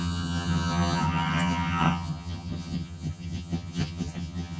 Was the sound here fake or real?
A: fake